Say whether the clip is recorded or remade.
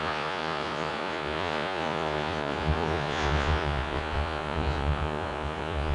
remade